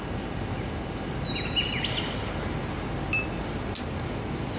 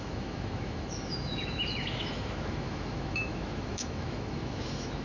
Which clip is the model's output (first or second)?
second